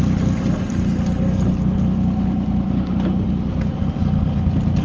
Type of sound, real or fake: real